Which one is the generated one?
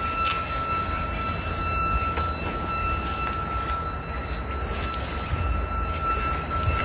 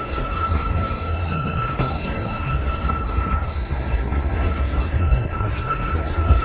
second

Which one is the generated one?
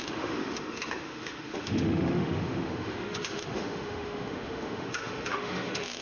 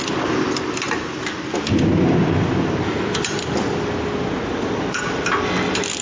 first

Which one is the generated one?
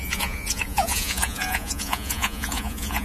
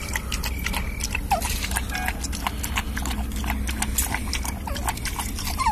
first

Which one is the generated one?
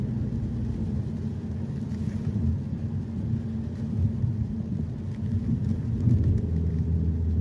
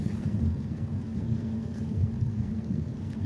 second